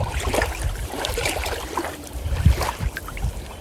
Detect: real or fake fake